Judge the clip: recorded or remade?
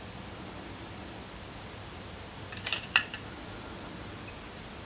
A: remade